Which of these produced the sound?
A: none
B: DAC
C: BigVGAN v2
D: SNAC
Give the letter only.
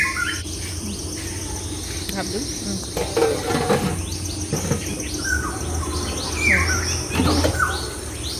A